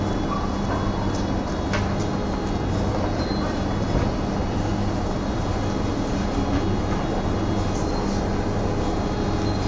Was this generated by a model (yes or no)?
no